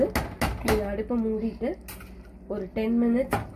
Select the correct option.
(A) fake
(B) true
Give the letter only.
B